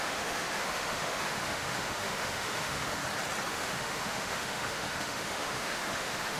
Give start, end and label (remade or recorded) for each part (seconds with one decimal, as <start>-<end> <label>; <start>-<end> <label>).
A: 0.0-3.0 remade; 3.0-3.5 recorded; 3.5-6.4 remade